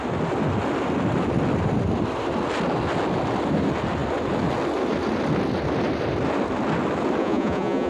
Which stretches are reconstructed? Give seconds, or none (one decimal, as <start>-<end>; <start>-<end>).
7.2-7.9